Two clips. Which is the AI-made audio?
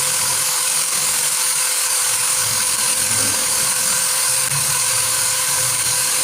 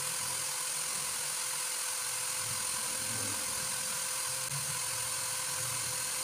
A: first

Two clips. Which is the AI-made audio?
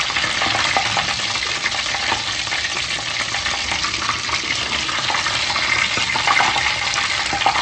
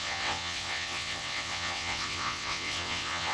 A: second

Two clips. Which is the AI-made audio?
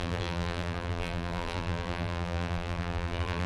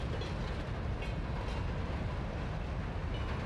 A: first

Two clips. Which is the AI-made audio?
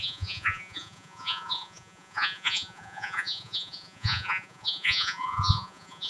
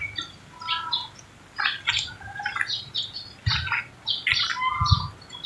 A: first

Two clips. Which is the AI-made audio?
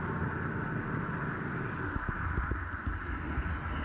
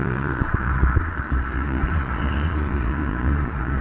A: second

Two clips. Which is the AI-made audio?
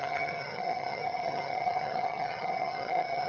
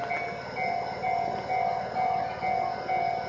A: first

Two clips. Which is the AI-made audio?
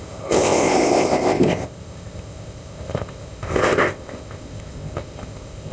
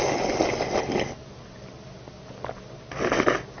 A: first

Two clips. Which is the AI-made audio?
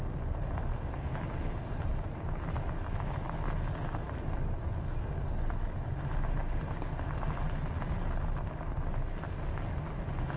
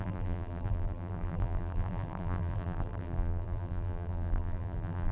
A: second